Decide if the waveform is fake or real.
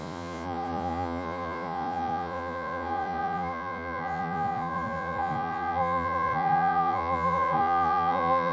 fake